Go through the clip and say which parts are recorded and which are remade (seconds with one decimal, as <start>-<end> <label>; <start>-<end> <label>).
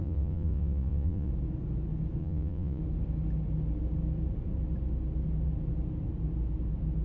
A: 0.0-1.3 remade; 1.3-2.2 recorded; 2.2-2.8 remade; 2.8-7.0 recorded